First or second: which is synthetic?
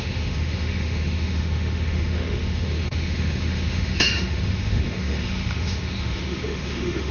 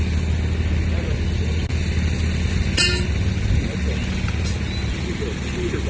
first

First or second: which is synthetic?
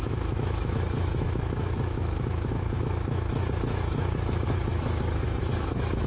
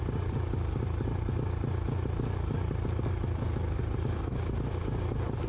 first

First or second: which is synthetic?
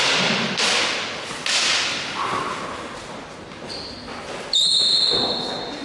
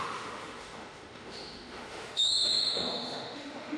second